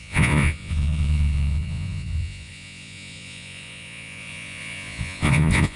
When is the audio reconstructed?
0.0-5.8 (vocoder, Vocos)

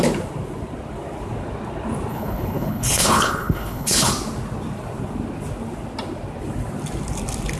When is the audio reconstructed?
2.1-4.1 (codec, HILCodec)